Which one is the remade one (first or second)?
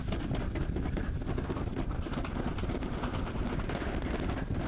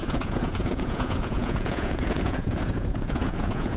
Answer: second